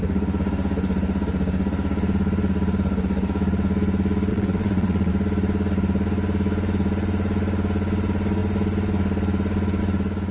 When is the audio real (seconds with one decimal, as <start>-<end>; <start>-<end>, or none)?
0.0-4.3; 5.1-10.3